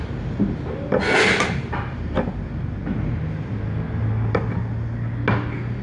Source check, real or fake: real